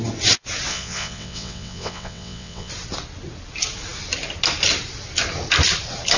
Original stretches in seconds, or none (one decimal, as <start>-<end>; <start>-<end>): 0.0-0.7; 2.7-6.2